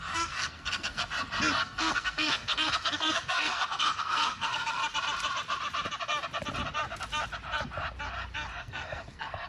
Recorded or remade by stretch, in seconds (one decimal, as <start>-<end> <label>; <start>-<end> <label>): 0.0-1.0 remade; 1.0-1.6 recorded; 1.6-4.8 remade; 4.8-8.6 recorded; 8.6-9.5 remade